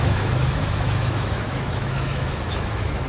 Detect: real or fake fake